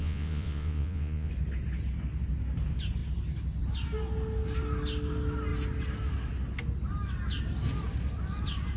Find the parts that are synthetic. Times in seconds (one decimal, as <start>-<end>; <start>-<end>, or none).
0.0-1.3